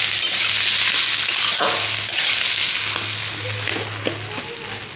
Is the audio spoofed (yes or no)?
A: no